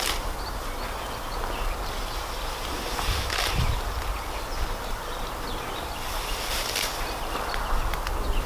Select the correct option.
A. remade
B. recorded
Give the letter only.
B